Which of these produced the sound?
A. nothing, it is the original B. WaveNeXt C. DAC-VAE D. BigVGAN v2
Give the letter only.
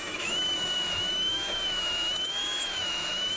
C